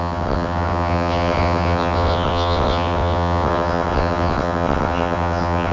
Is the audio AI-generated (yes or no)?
yes